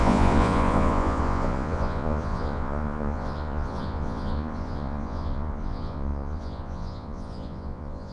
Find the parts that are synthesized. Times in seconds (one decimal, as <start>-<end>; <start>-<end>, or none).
0.0-8.1

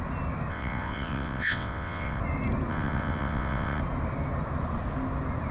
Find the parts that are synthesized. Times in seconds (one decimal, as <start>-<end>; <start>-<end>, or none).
0.5-2.2; 2.7-3.8

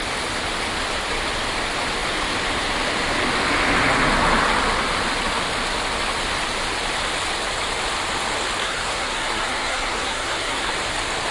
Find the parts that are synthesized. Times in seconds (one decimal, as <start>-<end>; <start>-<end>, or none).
8.6-10.7

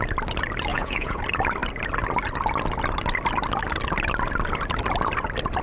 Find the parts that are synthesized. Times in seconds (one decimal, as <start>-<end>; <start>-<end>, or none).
0.7-1.2

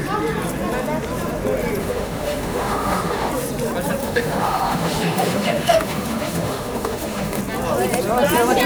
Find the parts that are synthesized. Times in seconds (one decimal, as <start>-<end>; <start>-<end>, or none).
1.8-3.3; 4.0-7.4

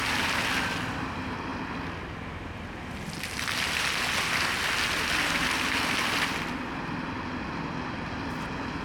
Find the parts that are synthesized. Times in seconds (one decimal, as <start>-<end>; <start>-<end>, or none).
none

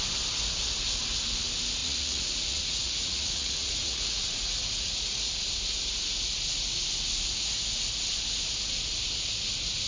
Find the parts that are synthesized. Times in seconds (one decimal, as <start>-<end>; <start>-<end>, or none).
1.8-5.3

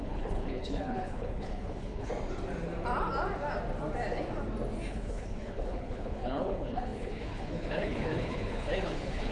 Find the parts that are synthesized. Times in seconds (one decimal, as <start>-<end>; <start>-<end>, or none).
0.0-2.1; 4.9-9.3